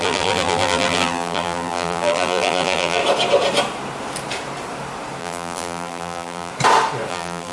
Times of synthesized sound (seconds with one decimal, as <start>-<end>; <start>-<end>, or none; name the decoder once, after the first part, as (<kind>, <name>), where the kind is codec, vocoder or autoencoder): 0.0-3.0 (vocoder, BigVGAN v2); 5.2-6.5; 7.1-7.5